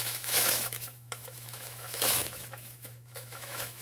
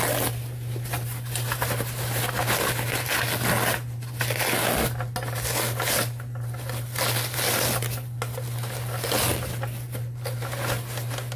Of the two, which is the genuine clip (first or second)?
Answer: second